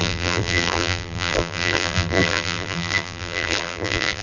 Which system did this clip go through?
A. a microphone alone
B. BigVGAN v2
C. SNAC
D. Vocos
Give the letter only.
B